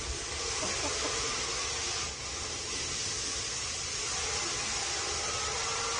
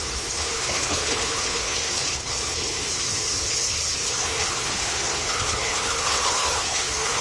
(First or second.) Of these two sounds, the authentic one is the first